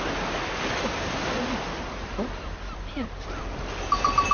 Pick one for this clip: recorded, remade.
recorded